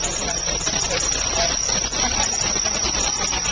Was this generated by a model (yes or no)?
yes